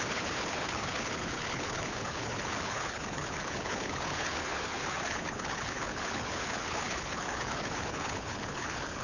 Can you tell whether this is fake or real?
fake